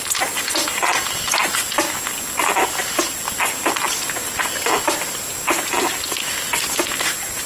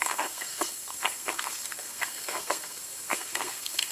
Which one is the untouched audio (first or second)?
first